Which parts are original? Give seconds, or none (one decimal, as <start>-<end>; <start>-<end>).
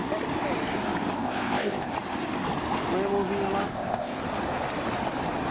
0.0-1.2; 1.9-3.7; 4.2-5.5